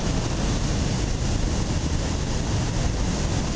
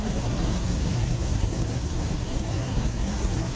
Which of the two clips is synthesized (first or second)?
second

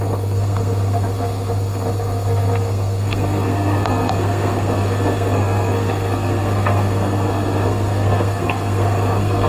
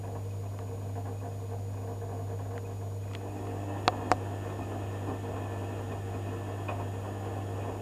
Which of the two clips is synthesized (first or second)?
first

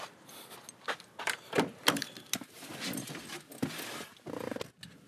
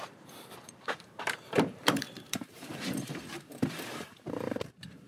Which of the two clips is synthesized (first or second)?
second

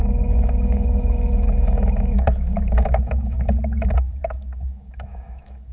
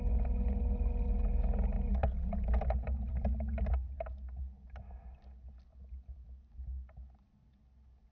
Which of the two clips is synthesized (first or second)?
first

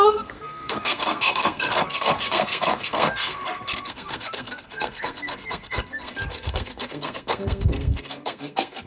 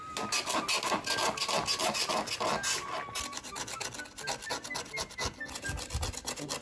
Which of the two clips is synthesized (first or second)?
first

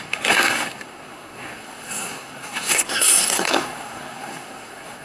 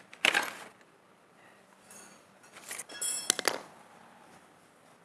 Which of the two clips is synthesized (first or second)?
first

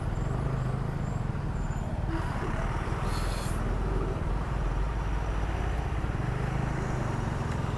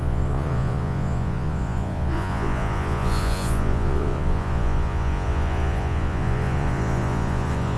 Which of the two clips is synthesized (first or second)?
second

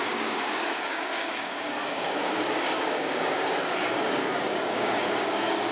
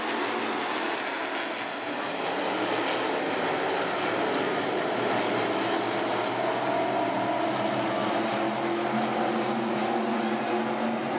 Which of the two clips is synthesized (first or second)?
first